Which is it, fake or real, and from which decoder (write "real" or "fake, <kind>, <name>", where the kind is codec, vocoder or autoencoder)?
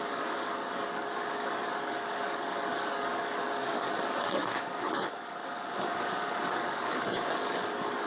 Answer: fake, codec, DAC